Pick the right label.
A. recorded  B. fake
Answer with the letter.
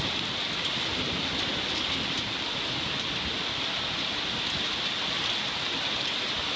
A